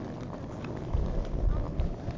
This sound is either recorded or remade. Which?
recorded